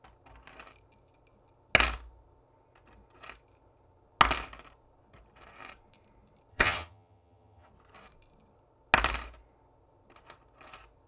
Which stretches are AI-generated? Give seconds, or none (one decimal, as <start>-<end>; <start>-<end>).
6.5-7.7